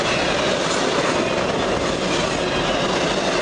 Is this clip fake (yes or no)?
no